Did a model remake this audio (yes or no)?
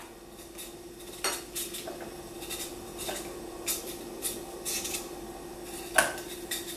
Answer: no